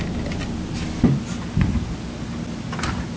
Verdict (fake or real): real